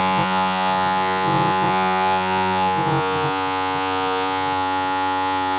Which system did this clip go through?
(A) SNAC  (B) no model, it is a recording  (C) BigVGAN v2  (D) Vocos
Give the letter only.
D